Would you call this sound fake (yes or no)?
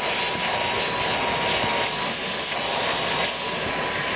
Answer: no